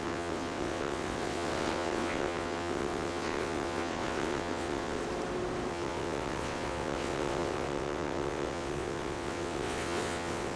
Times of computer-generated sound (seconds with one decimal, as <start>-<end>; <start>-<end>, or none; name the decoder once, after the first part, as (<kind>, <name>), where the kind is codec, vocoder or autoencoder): 0.0-5.0 (vocoder, WaveNeXt); 5.7-10.6